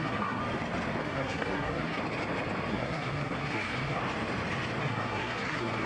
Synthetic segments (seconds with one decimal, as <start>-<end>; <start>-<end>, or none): 0.0-0.4; 1.0-2.0; 2.7-4.0; 4.8-5.9